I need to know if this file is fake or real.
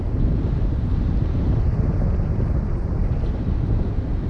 real